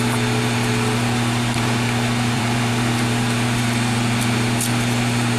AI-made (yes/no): yes